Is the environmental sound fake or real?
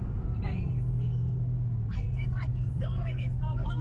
fake